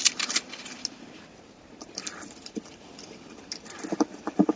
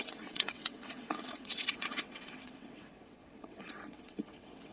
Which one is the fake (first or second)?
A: second